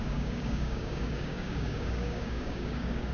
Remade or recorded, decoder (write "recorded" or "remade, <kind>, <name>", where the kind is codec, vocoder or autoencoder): remade, codec, DAC